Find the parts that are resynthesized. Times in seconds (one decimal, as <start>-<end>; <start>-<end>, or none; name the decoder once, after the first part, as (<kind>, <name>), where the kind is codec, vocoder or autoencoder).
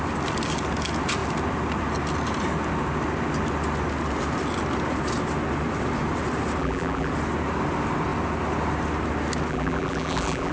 6.6-7.1 (vocoder, BigVGAN v2); 9.5-10.5